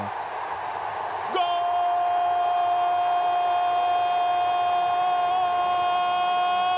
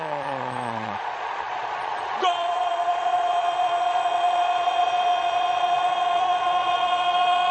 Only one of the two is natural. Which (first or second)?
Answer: first